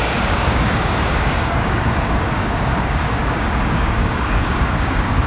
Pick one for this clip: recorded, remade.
remade